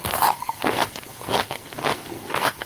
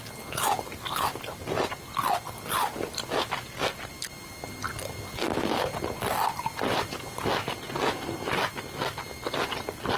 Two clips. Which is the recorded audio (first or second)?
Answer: second